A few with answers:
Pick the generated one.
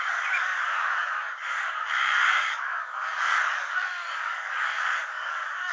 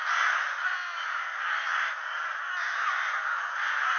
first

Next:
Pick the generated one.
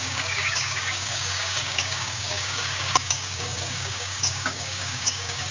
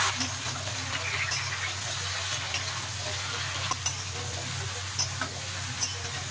first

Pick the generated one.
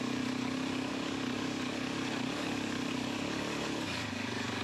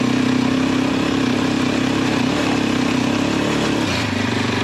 first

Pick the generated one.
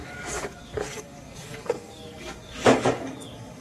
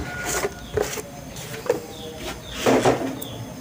first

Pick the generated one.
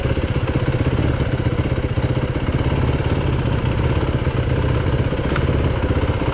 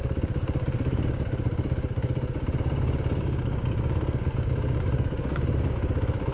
second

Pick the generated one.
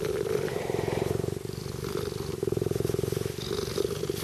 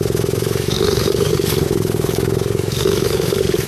second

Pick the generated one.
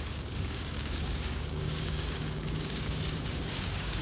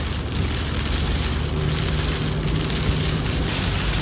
first